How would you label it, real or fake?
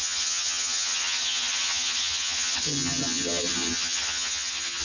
fake